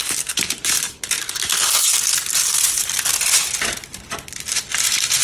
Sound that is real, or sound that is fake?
real